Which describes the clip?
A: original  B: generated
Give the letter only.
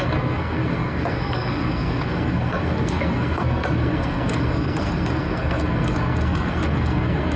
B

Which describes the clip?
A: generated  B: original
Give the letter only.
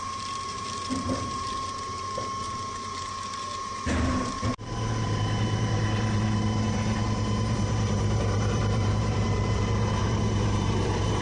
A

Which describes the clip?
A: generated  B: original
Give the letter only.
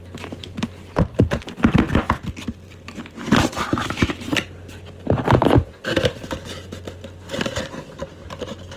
B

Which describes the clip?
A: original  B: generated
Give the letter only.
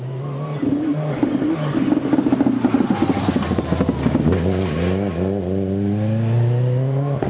A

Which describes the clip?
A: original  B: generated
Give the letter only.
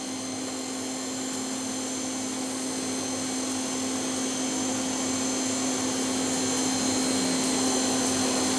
A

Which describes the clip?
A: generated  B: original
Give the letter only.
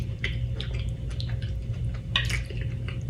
B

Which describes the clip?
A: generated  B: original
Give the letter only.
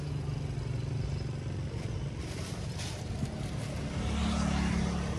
B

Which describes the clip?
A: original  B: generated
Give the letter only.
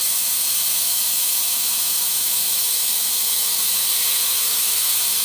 B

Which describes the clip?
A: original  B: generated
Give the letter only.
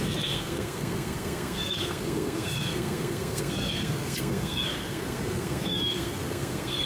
B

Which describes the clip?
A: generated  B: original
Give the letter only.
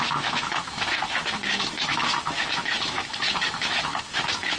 A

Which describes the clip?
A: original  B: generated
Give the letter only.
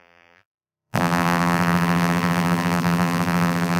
B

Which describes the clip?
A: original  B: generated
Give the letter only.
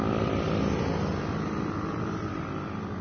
A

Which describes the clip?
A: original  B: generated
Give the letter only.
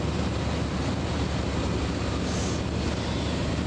A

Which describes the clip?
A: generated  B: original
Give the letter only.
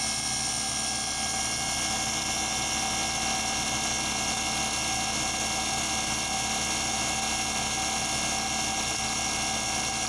B